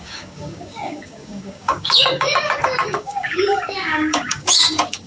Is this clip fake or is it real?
fake